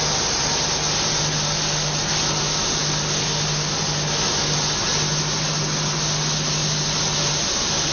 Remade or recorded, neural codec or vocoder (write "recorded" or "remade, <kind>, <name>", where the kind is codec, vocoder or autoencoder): recorded